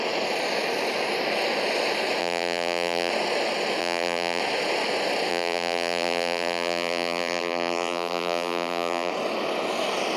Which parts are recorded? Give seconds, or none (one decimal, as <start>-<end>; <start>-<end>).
0.0-2.2; 3.1-3.8; 4.4-5.3; 9.1-10.2